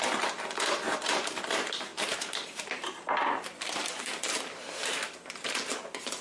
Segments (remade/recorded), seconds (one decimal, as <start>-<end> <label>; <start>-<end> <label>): 0.0-6.2 remade